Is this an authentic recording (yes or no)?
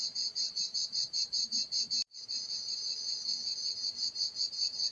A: no